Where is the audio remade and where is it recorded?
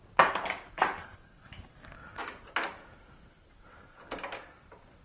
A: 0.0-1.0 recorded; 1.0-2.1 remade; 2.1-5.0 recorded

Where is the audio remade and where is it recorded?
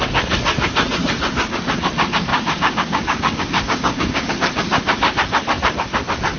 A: 0.0-2.3 recorded; 2.3-4.3 remade; 4.3-6.4 recorded